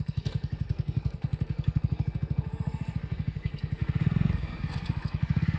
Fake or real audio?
fake